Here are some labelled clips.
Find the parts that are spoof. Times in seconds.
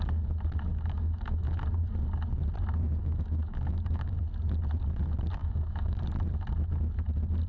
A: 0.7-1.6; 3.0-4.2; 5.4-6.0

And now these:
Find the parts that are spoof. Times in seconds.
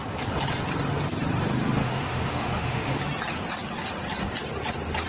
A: 1.8-3.0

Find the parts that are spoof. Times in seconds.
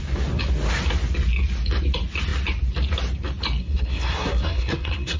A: 3.6-5.2